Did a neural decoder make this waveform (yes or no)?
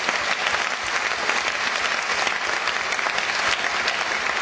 no